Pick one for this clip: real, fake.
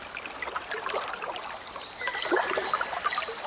real